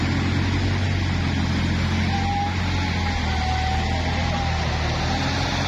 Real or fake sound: real